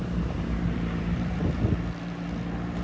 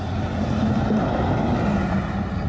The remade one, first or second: first